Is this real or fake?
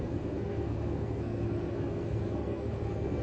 fake